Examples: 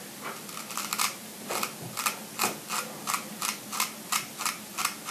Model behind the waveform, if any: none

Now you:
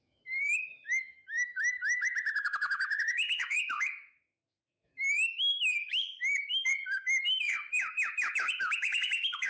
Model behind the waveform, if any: autoencoder, DAC-VAE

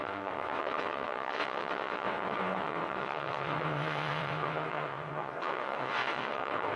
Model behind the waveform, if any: vocoder, WaveNeXt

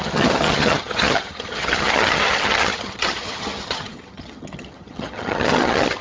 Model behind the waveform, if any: vocoder, HiFi-GAN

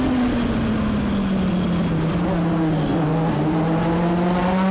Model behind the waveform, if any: none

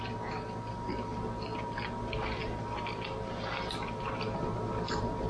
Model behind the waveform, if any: none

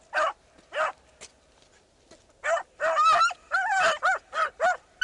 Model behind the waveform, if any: none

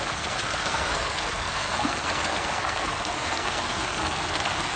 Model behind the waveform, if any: codec, SNAC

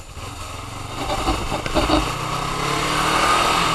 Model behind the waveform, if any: none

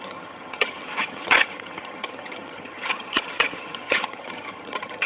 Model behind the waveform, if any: vocoder, HiFi-GAN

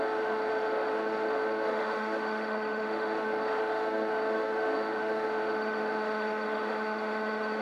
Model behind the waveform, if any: autoencoder, DAC-VAE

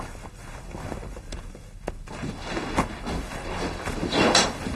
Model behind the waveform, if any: none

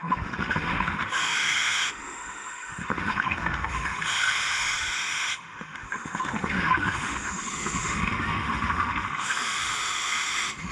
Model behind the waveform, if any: autoencoder, DAC-VAE